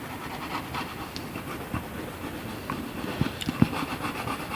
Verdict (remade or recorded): recorded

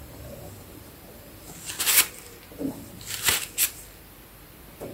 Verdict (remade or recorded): remade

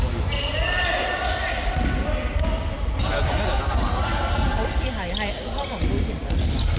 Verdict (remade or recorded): recorded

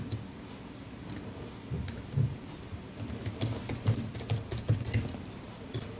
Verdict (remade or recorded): recorded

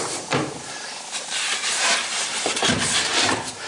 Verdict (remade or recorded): remade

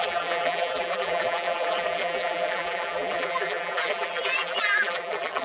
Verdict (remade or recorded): remade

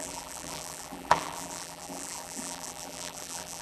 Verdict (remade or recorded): remade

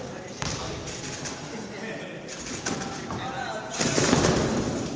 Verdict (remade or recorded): recorded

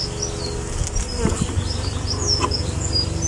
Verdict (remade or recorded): recorded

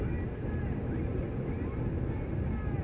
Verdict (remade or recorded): recorded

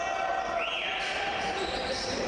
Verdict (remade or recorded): remade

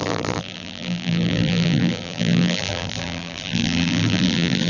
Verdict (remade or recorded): remade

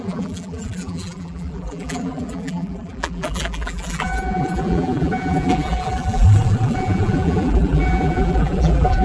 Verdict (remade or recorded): remade